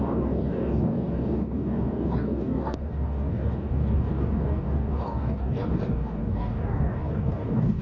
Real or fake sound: fake